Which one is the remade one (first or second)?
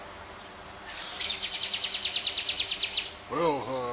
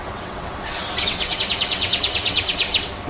second